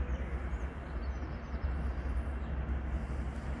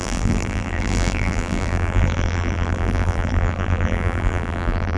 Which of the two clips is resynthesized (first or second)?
second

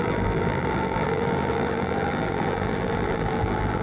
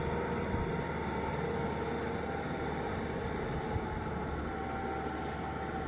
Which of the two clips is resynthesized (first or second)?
first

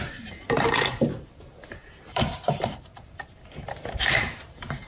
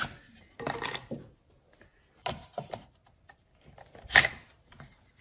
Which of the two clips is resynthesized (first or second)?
first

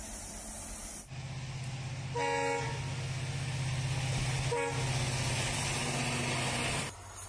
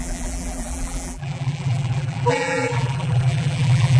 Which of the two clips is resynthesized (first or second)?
second